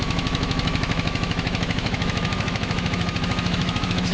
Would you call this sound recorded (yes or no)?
no